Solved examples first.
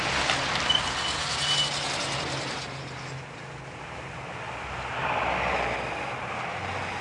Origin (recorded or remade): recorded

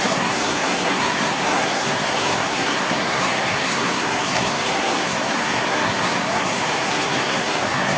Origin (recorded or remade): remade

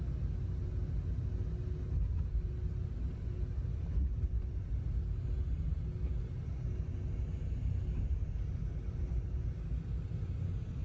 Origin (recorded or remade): recorded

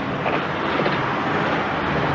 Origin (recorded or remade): recorded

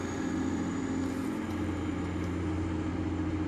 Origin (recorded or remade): recorded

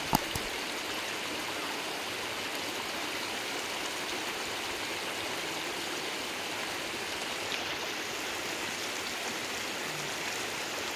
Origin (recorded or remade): recorded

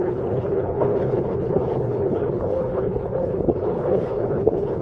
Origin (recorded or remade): remade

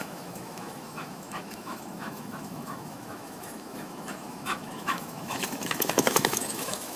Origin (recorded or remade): remade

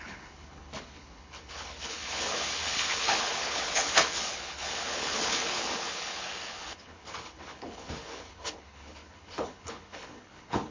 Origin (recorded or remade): remade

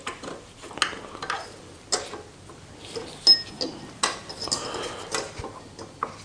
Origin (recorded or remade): recorded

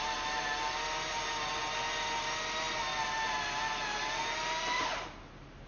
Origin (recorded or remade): recorded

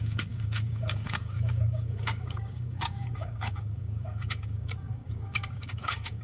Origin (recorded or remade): remade